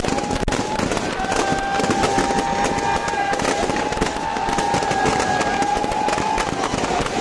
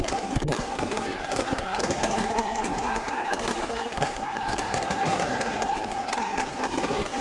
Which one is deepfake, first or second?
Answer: second